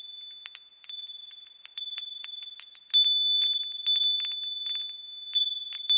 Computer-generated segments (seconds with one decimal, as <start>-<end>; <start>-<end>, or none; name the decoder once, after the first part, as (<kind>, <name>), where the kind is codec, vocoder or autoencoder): none